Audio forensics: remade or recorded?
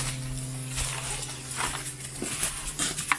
recorded